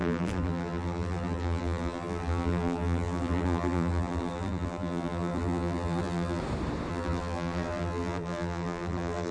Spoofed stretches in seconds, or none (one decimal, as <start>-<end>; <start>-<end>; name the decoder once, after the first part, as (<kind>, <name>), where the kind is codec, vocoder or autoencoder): 0.0-6.4 (vocoder, BigVGAN v2); 6.9-9.3